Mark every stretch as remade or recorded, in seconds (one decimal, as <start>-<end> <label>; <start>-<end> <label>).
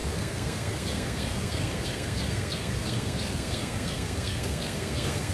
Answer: 0.0-5.3 remade